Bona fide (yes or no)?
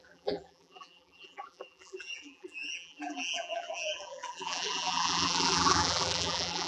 no